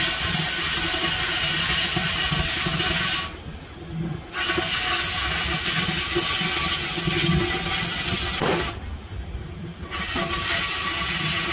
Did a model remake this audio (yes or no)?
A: no